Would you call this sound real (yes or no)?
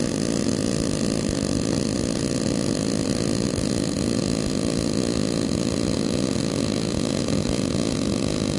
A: yes